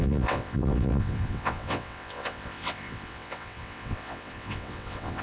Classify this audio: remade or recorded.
remade